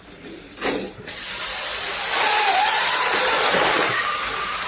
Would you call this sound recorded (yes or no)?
no